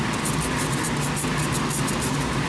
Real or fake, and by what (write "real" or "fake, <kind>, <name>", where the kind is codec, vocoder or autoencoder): real